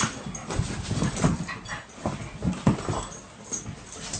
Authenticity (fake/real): real